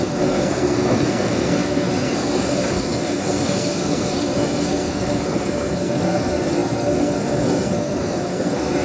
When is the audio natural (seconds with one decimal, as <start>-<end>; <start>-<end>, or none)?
none